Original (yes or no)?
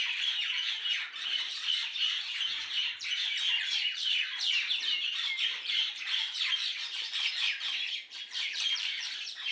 no